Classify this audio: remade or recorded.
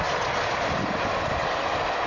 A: recorded